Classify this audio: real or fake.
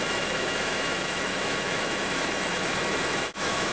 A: fake